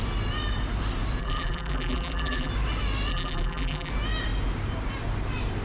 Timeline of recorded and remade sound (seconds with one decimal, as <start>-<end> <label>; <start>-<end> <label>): 0.0-1.2 recorded; 1.2-2.5 remade; 2.5-3.1 recorded; 3.1-3.9 remade; 3.9-5.6 recorded